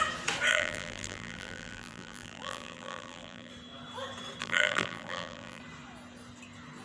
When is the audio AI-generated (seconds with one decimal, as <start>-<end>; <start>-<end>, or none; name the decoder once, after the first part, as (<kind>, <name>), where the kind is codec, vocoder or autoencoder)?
0.5-3.5 (vocoder, BigVGAN v2); 4.4-5.6